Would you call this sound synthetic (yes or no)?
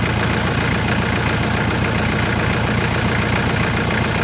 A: no